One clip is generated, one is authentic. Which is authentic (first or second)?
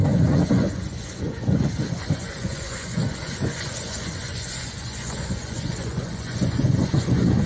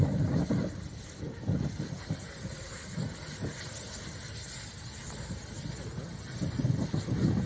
second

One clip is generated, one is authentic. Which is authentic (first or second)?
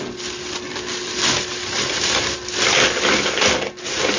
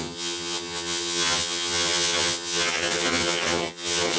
first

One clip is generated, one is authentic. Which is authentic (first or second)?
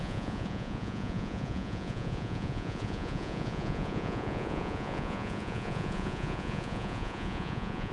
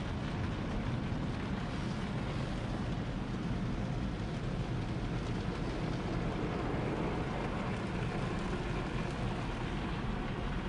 second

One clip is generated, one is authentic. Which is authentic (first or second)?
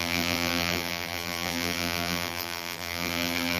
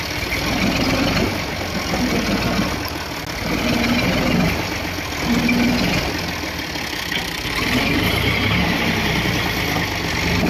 second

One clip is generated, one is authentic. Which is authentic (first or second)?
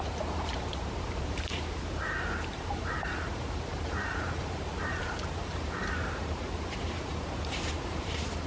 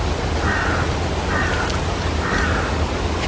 second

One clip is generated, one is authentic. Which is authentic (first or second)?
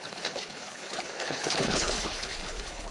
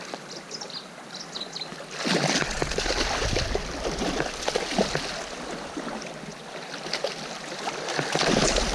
second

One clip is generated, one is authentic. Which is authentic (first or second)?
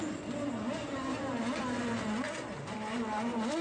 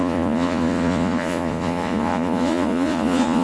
first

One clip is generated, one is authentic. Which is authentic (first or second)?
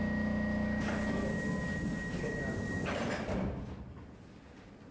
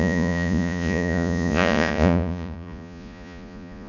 first